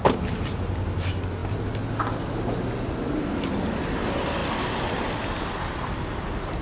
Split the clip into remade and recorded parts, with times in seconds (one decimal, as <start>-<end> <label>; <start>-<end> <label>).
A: 0.0-6.6 recorded